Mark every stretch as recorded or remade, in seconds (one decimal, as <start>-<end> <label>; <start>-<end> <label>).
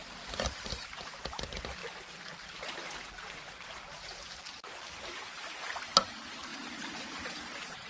0.0-7.9 recorded